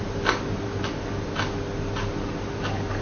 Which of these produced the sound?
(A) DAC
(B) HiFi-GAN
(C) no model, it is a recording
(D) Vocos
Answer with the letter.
C